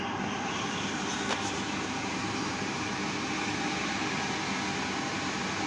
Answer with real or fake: fake